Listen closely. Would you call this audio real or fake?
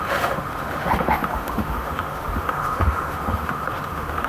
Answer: fake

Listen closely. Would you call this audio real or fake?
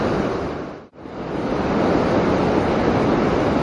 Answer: real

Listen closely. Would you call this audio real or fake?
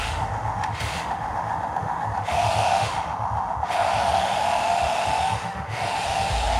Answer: fake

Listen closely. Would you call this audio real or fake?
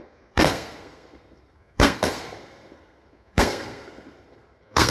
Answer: fake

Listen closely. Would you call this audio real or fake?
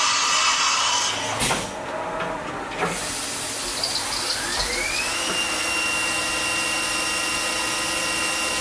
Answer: real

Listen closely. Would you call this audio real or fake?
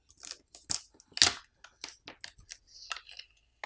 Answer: real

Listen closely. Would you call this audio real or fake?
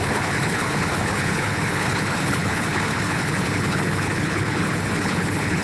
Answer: fake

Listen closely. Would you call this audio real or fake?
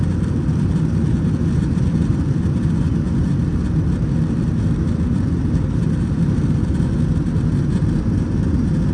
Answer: real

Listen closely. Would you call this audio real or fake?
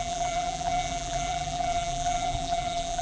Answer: fake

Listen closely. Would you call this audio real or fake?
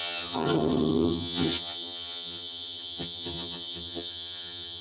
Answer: fake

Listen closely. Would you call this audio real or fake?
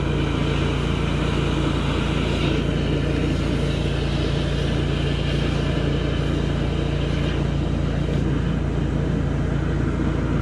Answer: real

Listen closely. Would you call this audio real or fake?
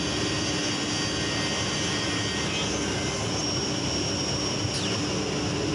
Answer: real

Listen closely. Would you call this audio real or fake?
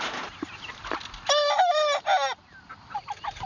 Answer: real